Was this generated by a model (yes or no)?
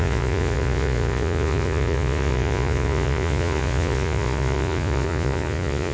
yes